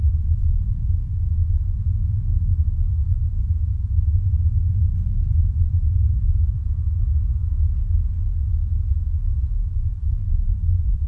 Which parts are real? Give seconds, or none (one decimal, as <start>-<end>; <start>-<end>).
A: 0.8-5.3; 7.4-9.7